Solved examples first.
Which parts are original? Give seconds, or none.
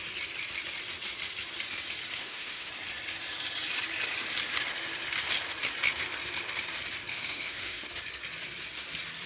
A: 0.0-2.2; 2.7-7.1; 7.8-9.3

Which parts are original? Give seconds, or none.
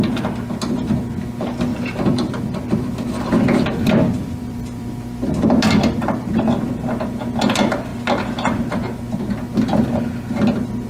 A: 0.0-1.7; 6.4-10.9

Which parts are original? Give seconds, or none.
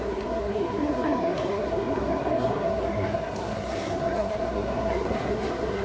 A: none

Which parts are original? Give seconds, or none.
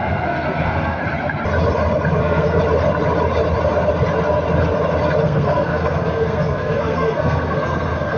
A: 1.0-2.2; 2.6-5.2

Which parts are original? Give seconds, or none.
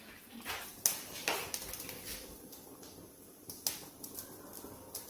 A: 0.0-5.1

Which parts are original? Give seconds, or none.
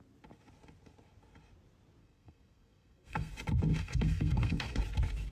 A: 0.0-2.0; 3.3-3.7; 4.8-5.3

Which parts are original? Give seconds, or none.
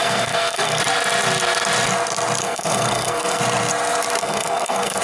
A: 0.8-2.4; 3.4-4.2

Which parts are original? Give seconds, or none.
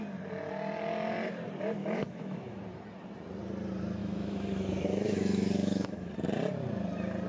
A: 0.0-1.8; 2.6-4.0; 6.1-7.3